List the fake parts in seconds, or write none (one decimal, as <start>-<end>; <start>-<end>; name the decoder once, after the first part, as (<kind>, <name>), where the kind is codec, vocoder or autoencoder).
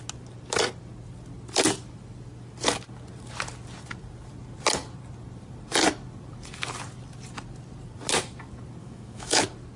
8.8-9.4 (autoencoder, DAC-VAE)